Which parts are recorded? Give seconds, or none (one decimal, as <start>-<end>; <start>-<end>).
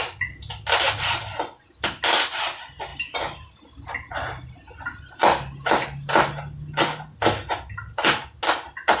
0.0-9.0